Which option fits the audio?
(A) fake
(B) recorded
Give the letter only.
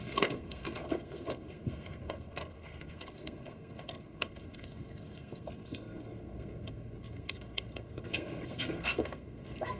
A